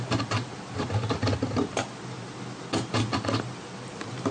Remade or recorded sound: recorded